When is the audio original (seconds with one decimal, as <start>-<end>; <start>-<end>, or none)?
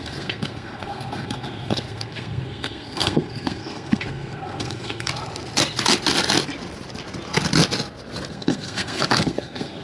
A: 5.1-8.3